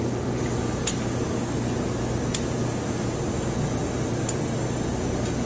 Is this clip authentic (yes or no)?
yes